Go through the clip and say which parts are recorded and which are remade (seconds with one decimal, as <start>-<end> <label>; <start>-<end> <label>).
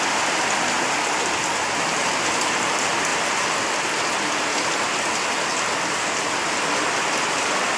0.0-7.8 recorded